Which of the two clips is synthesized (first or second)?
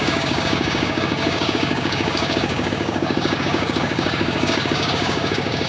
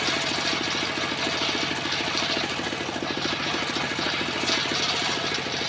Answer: first